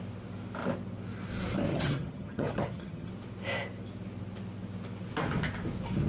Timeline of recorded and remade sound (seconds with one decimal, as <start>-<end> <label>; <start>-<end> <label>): 0.0-1.7 recorded; 1.7-3.1 remade; 3.1-6.1 recorded

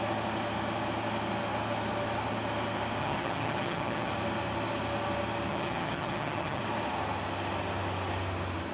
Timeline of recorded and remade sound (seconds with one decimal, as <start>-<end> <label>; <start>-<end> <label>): 0.0-3.0 recorded; 3.0-4.1 remade; 4.1-5.5 recorded; 5.5-6.6 remade; 6.6-8.7 recorded

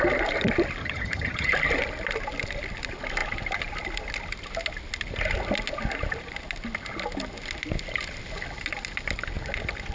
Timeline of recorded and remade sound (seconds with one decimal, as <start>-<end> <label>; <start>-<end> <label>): 0.0-0.8 recorded; 0.8-1.5 remade; 1.5-9.9 recorded

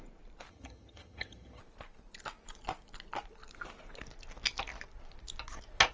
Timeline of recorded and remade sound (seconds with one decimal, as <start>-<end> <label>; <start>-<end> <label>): 0.0-0.5 recorded; 0.5-1.6 remade; 1.6-5.9 recorded

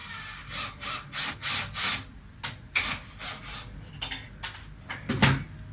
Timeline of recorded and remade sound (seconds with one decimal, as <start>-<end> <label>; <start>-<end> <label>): 0.0-5.7 recorded

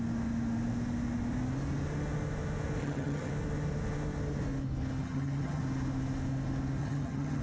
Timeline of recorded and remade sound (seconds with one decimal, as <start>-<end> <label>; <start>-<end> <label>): 0.0-2.8 recorded; 2.8-3.3 remade; 3.3-5.0 recorded; 5.0-5.6 remade; 5.6-6.8 recorded; 6.8-7.4 remade

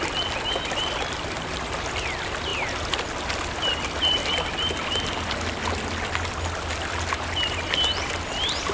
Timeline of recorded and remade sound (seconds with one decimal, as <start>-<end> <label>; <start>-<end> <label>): 0.0-8.7 recorded

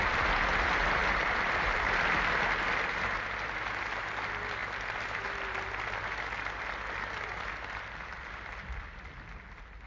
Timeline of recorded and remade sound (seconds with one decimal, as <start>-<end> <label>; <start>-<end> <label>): 0.0-9.9 recorded